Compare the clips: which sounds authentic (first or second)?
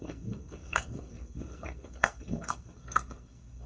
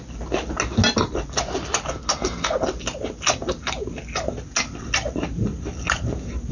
second